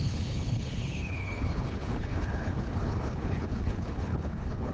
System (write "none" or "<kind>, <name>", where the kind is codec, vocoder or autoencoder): codec, HILCodec